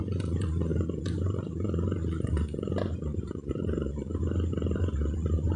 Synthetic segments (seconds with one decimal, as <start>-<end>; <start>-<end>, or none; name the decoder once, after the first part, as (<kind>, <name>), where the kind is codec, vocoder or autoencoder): 0.0-4.1 (vocoder, Vocos); 4.8-5.6